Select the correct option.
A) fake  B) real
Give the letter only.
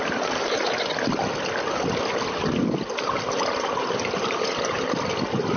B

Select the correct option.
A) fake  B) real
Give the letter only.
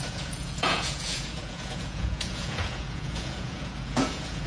A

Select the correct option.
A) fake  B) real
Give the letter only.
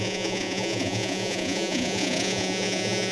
A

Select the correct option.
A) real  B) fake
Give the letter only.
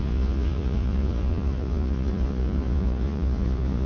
B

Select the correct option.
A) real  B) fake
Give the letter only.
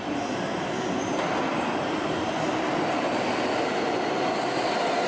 A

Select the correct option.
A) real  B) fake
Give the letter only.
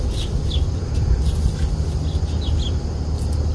A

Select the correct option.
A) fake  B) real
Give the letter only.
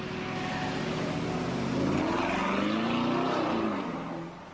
B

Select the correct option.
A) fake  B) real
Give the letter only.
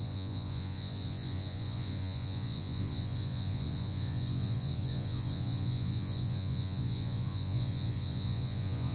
A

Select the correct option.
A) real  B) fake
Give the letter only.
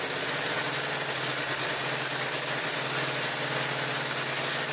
A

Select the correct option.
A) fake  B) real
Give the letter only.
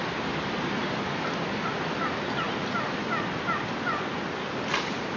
B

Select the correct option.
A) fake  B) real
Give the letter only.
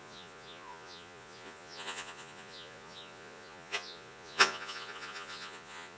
A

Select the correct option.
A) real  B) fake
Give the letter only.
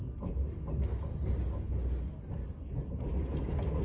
A